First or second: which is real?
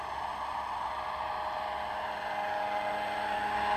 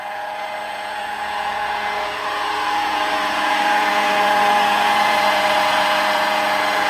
first